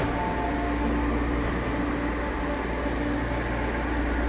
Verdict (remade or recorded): recorded